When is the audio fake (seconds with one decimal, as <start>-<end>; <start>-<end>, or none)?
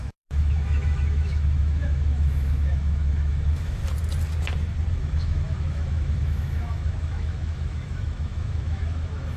0.0-3.8; 4.9-9.4